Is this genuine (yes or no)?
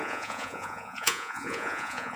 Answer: no